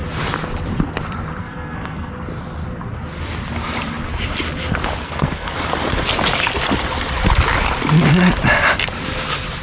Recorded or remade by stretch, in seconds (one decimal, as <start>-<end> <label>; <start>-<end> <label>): 0.0-1.4 recorded; 1.4-2.1 remade; 2.1-5.0 recorded; 5.0-5.5 remade; 5.5-9.6 recorded